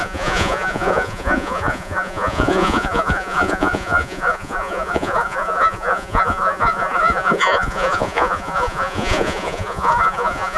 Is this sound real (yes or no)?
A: no